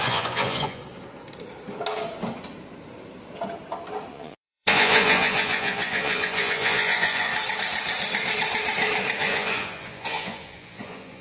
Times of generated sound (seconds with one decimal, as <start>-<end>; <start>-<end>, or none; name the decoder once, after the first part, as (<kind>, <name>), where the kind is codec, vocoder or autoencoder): 0.0-0.8 (vocoder, Vocos); 4.1-7.3; 9.2-11.2